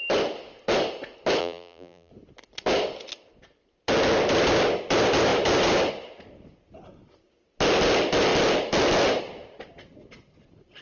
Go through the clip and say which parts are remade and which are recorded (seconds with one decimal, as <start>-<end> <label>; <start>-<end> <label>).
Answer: 0.0-1.4 recorded; 1.4-2.1 remade; 2.1-10.8 recorded